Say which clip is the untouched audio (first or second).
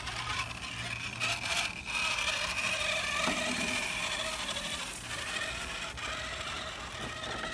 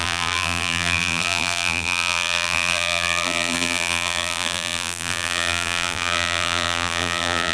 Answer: first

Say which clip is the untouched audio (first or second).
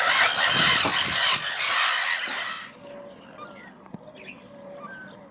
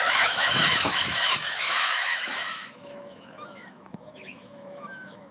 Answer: first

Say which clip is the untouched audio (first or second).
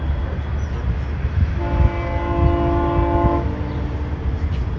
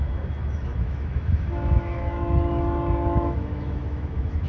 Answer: first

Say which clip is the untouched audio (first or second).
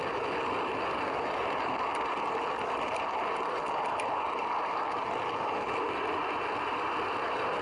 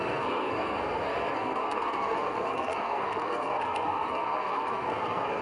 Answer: first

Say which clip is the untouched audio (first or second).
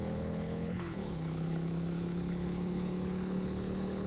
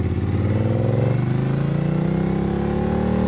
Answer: second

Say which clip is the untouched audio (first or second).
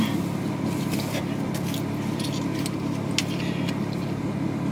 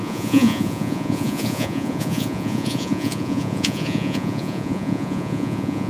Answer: first